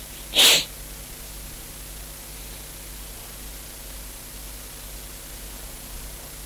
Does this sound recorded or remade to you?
recorded